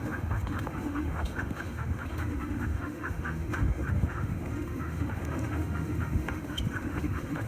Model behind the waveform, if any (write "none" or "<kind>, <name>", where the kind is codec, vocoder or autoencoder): autoencoder, DAC-VAE